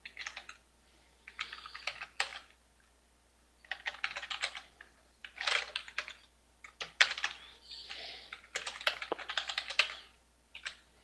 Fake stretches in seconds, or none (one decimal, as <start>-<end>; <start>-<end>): none